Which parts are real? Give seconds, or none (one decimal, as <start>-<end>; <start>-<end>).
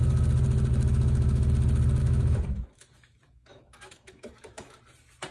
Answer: 0.0-0.7; 1.5-2.0; 4.8-5.3